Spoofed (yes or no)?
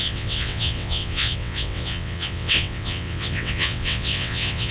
yes